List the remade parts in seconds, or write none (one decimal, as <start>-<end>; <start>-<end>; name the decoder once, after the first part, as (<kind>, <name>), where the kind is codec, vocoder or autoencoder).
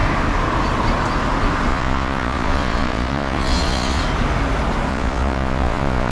1.7-4.0 (vocoder, Vocos); 4.9-6.1